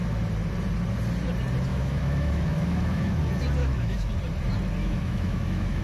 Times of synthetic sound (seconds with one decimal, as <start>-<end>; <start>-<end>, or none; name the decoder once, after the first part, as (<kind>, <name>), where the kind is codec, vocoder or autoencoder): 1.7-3.2 (autoencoder, DAC-VAE); 3.6-4.1; 4.8-5.8